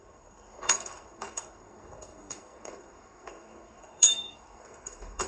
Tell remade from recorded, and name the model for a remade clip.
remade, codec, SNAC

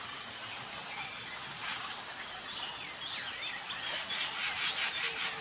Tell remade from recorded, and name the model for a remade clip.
recorded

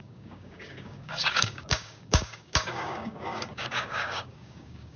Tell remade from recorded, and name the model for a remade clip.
remade, codec, DAC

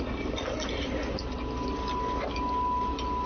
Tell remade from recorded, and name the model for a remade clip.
recorded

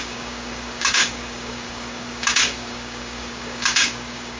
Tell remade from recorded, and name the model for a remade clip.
remade, codec, DAC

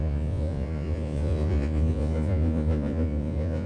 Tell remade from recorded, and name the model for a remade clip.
remade, vocoder, Vocos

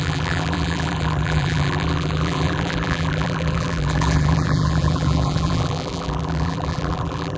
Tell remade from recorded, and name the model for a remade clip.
remade, vocoder, BigVGAN v2